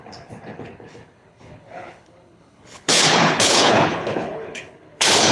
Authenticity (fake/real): fake